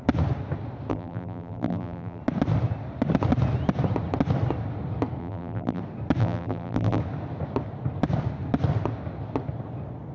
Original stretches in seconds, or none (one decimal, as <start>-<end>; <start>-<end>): 0.0-0.9; 2.2-5.2; 5.8-6.2; 7.0-10.1